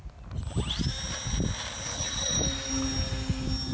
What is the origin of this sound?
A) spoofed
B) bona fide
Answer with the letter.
B